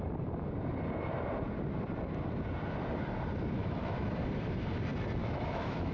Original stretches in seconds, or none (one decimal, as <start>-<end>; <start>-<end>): 0.0-3.6; 4.1-5.2